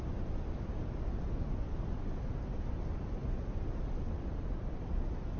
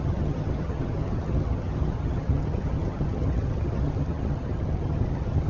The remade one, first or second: second